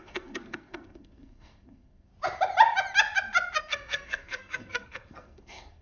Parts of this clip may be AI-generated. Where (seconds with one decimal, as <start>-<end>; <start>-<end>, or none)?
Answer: 0.0-2.1; 3.6-5.8